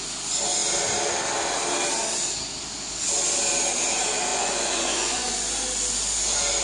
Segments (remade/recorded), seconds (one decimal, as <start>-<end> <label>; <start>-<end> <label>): 0.0-4.3 recorded; 4.3-5.3 remade; 5.3-6.6 recorded

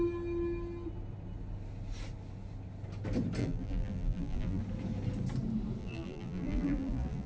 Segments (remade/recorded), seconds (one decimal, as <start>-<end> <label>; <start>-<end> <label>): 0.0-3.4 recorded; 3.4-4.6 remade; 4.6-5.8 recorded; 5.8-7.3 remade

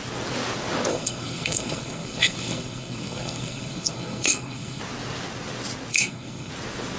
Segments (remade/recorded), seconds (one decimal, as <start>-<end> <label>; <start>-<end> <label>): 0.0-0.9 recorded; 0.9-4.8 remade; 4.8-5.9 recorded; 5.9-6.5 remade; 6.5-7.0 recorded

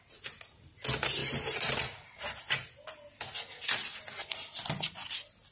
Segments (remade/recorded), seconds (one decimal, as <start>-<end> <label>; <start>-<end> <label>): 0.0-1.2 recorded; 1.2-1.8 remade; 1.8-5.5 recorded

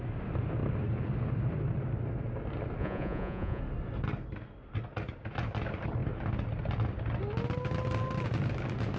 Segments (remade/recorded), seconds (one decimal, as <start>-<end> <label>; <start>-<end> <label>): 0.0-2.8 recorded; 2.8-3.6 remade; 3.6-9.0 recorded